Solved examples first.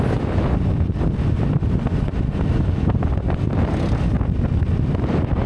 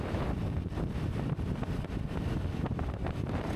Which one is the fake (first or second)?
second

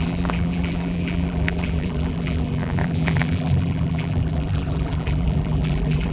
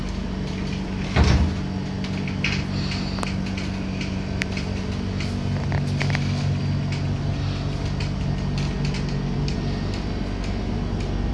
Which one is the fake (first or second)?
first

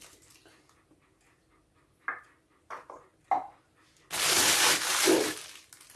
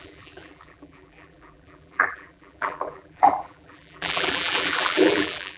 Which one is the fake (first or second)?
second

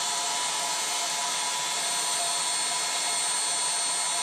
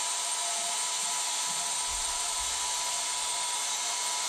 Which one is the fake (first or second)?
second